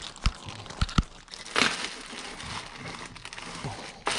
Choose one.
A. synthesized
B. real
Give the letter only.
B